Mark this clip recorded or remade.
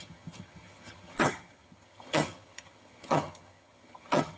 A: remade